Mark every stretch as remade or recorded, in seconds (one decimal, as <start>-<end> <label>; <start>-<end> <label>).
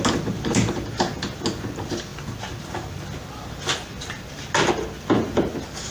0.0-5.9 recorded